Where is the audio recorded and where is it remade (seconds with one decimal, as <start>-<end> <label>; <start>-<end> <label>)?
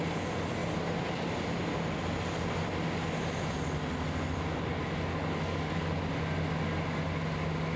0.0-5.1 recorded; 5.1-6.0 remade; 6.0-7.8 recorded